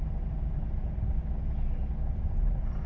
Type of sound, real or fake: real